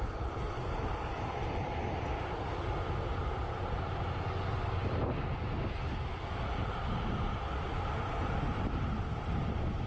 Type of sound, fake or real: real